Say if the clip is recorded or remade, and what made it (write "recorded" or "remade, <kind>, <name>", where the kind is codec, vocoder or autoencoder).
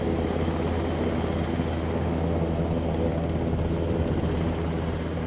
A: recorded